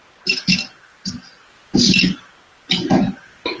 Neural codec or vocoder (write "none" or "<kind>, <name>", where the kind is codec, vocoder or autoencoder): none